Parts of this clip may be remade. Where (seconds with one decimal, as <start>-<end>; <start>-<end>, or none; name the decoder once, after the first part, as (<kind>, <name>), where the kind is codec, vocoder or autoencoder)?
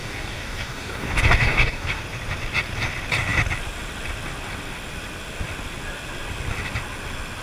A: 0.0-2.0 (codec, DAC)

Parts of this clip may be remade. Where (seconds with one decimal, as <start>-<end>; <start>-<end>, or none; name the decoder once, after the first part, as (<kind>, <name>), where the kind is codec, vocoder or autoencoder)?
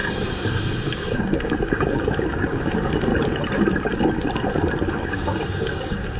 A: 0.0-3.1 (codec, DAC); 4.9-6.2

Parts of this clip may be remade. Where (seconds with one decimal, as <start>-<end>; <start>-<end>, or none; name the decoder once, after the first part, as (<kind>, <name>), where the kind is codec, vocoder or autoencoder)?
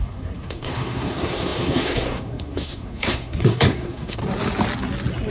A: 0.0-4.2 (codec, SNAC)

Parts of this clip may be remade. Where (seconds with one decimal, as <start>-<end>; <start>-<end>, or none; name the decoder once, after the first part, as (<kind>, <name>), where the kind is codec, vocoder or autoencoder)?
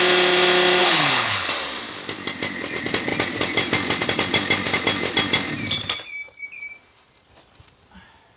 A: 0.8-1.5 (codec, HILCodec)